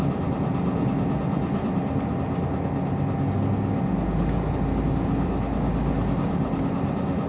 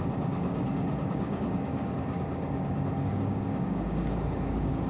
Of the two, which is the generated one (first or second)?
second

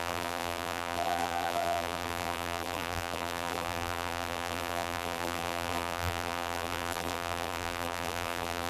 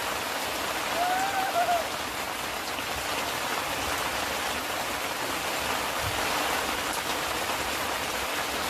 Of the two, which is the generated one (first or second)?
first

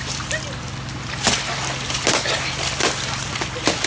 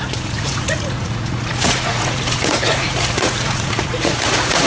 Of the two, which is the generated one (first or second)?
second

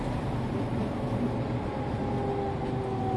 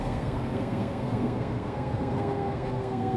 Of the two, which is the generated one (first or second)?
second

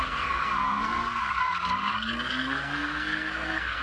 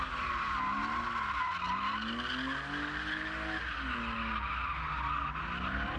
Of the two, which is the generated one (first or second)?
first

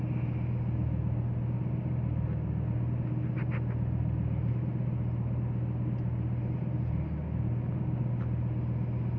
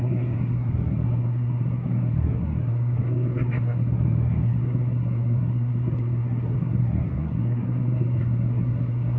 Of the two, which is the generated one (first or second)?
second